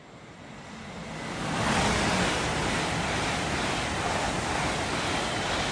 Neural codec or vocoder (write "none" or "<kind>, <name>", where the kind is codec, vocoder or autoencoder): none